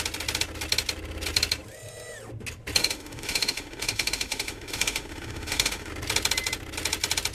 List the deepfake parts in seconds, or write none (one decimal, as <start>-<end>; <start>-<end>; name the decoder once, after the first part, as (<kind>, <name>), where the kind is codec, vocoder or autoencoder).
2.8-5.9 (autoencoder, DAC-VAE)